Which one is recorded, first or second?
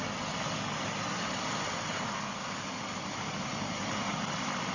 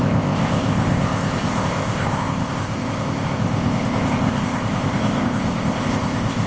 first